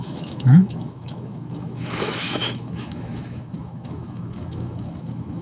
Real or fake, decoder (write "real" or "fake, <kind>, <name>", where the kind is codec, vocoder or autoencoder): fake, autoencoder, DAC-VAE